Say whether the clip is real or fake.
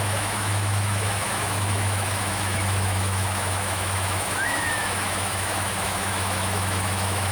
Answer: fake